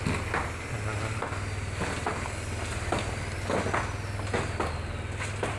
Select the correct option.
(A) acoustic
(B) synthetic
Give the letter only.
A